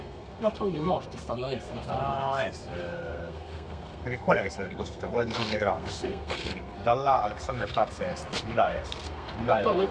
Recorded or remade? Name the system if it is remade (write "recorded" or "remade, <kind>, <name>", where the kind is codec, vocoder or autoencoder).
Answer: remade, codec, SNAC